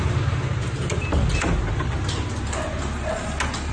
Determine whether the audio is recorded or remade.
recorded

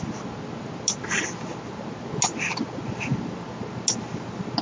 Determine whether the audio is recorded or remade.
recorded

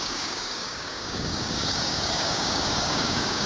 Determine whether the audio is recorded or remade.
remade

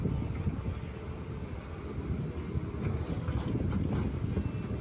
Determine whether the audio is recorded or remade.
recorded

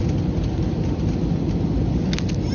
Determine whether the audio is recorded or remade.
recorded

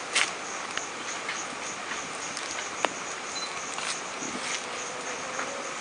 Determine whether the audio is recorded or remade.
recorded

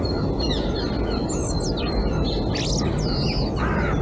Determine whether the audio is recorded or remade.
recorded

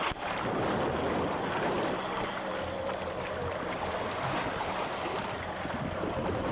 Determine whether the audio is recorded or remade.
recorded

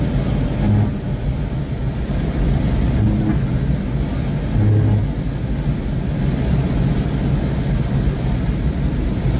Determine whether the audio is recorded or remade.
recorded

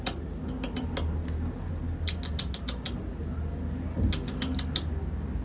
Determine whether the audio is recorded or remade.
recorded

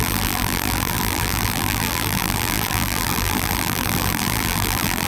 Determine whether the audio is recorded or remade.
remade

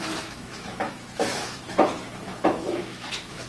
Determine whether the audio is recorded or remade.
remade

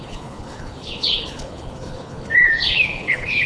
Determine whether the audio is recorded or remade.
remade